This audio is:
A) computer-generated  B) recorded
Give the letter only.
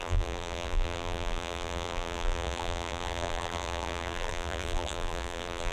A